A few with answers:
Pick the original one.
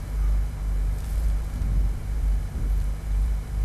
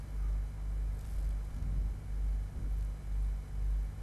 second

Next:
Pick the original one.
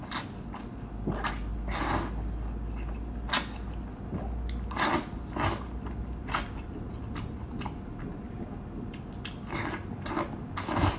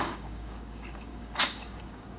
first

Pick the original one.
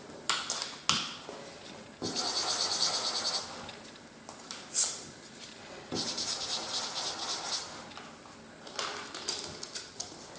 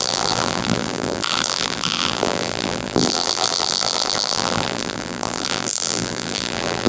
first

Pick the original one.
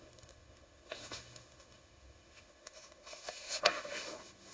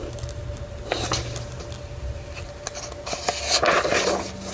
second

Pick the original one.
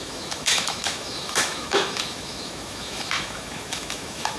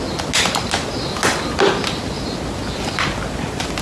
second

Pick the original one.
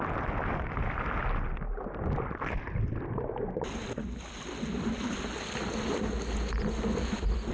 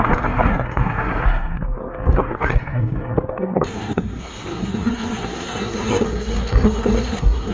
first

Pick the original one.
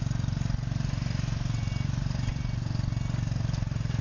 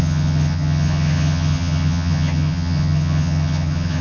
first